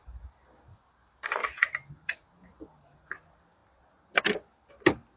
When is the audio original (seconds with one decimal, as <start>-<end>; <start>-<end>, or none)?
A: 0.0-5.2